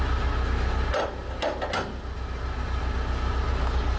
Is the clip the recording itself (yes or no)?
yes